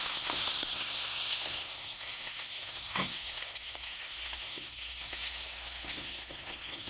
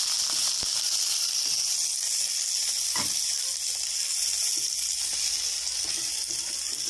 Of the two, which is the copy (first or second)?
first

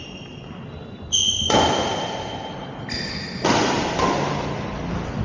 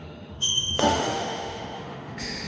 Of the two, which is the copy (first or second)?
second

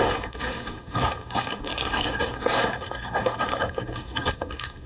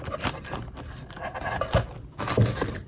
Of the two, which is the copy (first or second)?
first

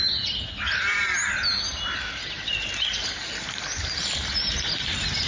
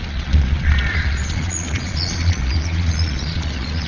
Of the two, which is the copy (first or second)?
second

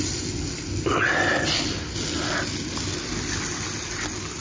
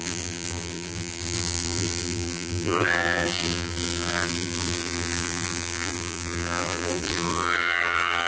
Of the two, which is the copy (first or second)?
second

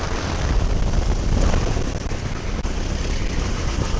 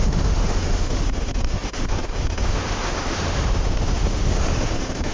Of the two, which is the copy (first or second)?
second